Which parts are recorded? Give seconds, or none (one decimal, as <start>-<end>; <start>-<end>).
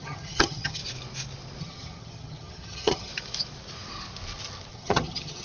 0.8-1.6; 3.1-4.7